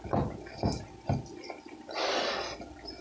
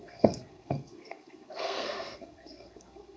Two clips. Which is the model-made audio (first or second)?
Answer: second